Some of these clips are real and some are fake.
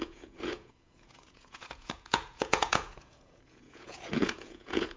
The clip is fake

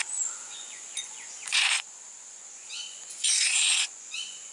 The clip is fake